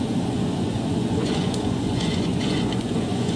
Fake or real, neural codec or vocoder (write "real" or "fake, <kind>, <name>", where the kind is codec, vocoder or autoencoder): fake, vocoder, Vocos